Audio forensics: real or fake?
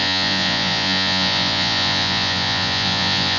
fake